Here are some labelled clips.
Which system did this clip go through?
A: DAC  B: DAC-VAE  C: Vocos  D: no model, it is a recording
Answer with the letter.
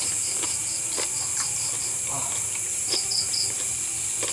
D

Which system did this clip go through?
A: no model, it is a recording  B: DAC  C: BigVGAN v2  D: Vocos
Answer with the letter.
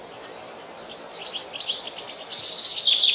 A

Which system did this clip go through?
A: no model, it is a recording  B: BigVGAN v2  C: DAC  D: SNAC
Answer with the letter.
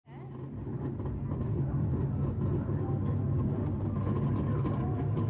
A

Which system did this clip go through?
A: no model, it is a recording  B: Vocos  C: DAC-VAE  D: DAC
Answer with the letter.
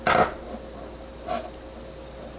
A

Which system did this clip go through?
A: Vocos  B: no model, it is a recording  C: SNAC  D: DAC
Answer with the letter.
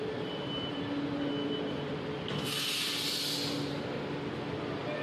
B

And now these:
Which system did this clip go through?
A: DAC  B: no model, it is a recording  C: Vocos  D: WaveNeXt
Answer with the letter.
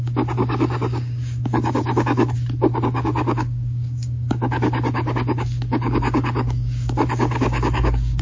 A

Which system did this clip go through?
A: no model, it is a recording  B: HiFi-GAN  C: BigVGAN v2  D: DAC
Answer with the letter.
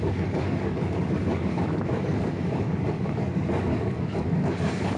D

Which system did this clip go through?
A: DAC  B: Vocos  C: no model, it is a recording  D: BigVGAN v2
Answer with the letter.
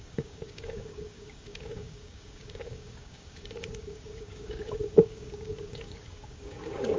A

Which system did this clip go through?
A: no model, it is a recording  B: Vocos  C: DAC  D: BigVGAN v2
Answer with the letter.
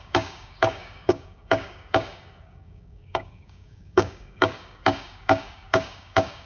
C